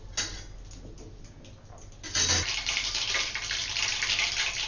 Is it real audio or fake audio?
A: real